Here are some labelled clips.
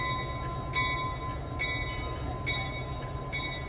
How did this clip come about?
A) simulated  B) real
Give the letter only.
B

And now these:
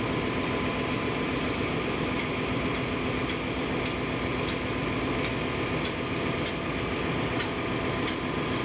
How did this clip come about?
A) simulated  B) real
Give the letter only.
B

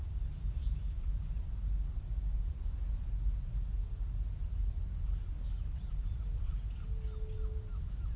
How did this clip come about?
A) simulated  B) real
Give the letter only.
B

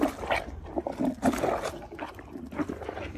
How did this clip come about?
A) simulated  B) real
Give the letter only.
B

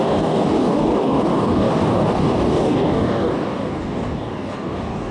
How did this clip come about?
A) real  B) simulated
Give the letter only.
B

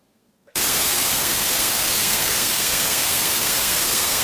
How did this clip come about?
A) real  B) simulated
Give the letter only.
B